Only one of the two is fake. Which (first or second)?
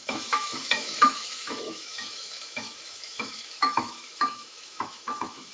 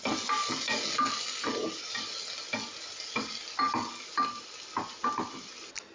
first